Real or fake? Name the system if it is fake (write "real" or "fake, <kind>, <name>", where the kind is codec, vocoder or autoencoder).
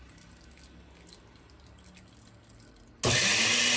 real